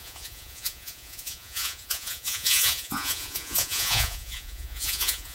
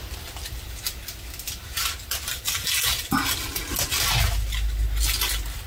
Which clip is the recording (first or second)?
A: second